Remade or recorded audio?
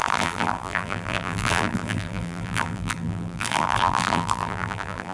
remade